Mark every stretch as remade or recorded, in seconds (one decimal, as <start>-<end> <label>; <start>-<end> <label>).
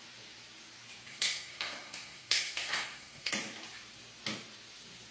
0.0-1.1 recorded; 1.1-3.3 remade; 3.3-5.1 recorded